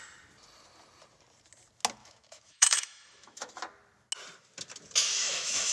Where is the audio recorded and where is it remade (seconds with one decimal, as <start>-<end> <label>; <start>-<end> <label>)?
0.0-2.0 recorded; 2.0-3.5 remade; 3.5-5.0 recorded; 5.0-5.7 remade